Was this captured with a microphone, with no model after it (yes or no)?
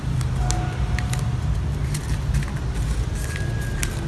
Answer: yes